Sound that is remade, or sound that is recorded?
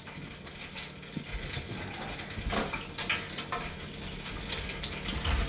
recorded